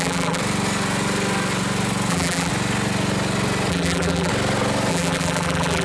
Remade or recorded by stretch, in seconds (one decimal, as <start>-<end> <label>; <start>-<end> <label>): 0.0-0.4 remade; 0.4-2.1 recorded; 2.1-2.5 remade; 2.5-3.7 recorded; 3.7-4.3 remade; 4.3-4.9 recorded; 4.9-5.8 remade